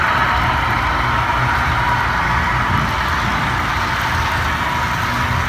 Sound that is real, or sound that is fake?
real